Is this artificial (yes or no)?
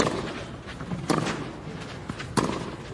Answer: no